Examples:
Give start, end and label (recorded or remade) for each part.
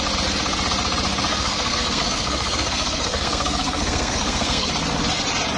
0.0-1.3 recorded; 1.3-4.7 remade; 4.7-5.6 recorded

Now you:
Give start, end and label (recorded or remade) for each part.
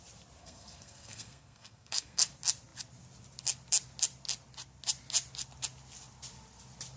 0.0-0.4 recorded; 0.4-2.3 remade; 2.3-7.0 recorded